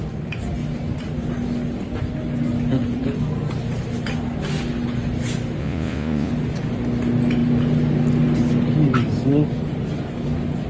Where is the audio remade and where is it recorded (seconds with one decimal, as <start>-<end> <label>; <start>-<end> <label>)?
0.0-5.6 recorded; 5.6-6.3 remade; 6.3-10.7 recorded